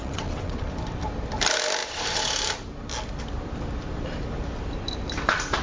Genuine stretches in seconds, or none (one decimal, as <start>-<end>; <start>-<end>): 0.7-5.6